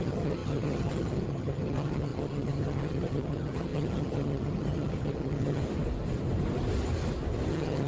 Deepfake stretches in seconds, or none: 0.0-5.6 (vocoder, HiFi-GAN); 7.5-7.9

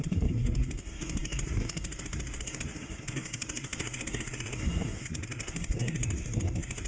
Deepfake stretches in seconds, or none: 0.0-6.9 (codec, SNAC)

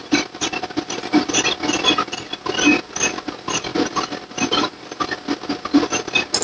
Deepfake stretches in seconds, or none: none